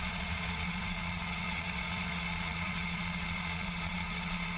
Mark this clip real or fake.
fake